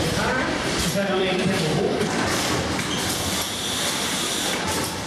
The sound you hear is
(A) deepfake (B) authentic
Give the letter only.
A